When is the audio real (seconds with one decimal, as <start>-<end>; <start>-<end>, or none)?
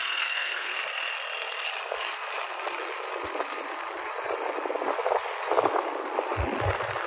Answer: 0.8-7.1